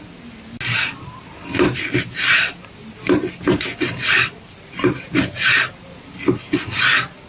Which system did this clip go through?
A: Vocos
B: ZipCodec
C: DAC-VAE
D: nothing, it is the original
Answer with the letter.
D